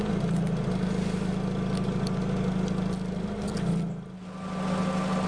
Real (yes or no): yes